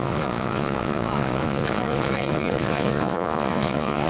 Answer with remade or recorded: remade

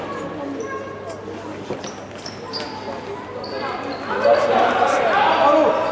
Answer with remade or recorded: recorded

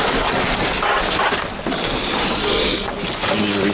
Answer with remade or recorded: recorded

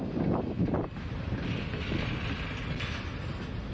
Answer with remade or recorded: recorded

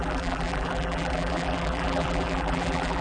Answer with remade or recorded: remade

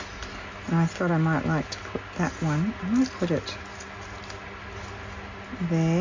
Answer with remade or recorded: recorded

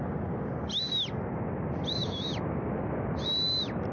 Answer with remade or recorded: recorded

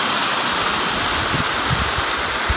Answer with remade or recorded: recorded